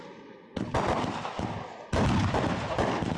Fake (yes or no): no